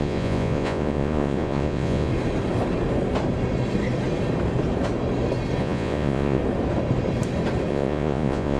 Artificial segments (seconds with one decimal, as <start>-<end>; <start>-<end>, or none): 0.0-2.1; 5.6-6.4; 7.7-8.6